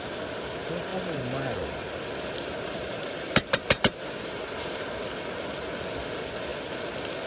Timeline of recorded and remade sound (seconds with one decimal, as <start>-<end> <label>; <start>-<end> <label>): 0.0-0.9 recorded; 0.9-5.1 remade; 5.1-7.3 recorded